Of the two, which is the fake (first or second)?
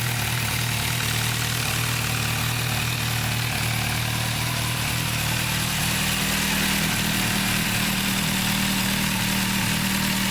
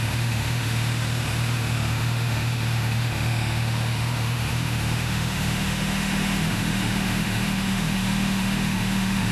second